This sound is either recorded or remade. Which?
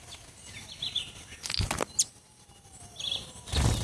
recorded